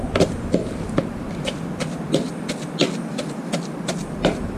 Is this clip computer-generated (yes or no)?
no